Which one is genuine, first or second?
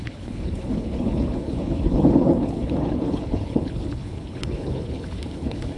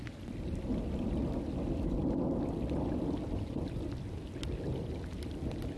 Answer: second